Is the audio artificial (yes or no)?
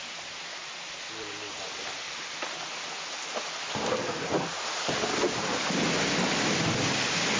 no